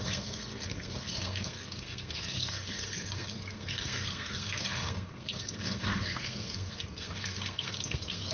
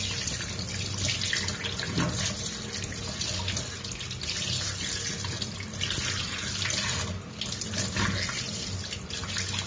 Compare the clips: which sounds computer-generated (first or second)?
first